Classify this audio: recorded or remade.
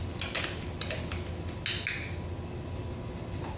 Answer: recorded